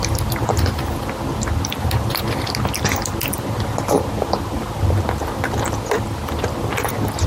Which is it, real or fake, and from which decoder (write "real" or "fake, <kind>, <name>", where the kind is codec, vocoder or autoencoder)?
real